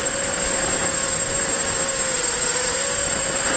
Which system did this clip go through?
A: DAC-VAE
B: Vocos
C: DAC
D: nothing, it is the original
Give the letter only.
D